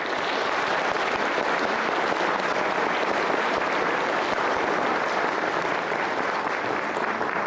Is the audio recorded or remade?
recorded